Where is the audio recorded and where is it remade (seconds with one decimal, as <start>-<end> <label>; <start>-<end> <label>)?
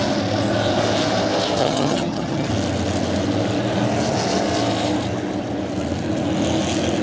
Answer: 0.0-1.6 recorded; 1.6-2.5 remade; 2.5-7.0 recorded